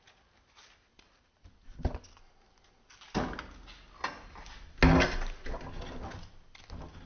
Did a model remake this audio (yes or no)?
no